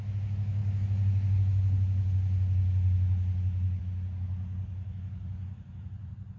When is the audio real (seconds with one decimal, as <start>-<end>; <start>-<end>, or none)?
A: 0.0-6.4

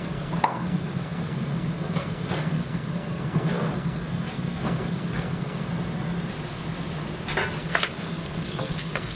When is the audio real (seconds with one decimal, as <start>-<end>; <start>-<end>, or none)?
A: 5.7-7.6

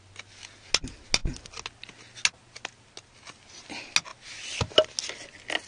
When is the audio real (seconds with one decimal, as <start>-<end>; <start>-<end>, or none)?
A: 0.0-5.7

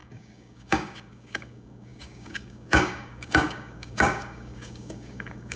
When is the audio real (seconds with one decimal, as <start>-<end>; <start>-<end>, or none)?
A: none

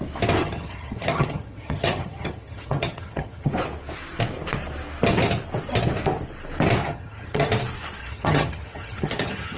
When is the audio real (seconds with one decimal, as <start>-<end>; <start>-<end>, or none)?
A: 0.0-0.4; 3.5-6.8; 7.5-8.0